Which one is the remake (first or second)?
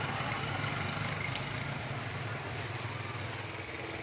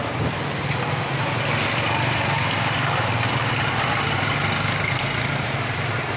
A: first